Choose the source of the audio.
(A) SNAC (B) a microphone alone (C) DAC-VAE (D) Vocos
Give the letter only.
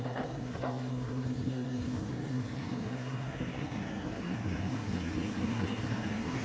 A